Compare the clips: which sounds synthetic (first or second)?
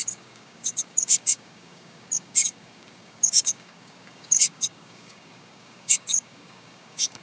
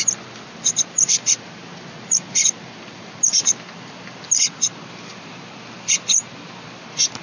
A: first